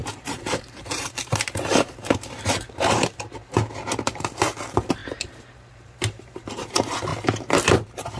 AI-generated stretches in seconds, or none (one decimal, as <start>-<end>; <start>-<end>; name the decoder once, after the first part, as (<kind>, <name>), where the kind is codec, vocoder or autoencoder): 0.0-7.1 (vocoder, BigVGAN v2)